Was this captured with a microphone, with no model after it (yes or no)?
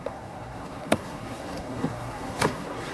no